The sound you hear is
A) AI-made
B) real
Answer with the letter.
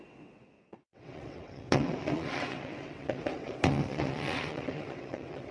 A